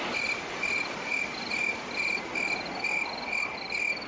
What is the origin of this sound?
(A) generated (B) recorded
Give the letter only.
B